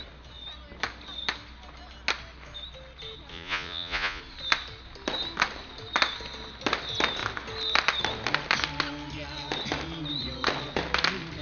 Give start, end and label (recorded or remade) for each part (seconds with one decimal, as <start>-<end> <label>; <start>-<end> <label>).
0.0-3.3 recorded; 3.3-4.2 remade; 4.2-11.4 recorded